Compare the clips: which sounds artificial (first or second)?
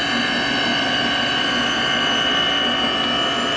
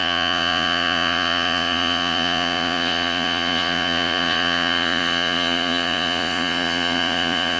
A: second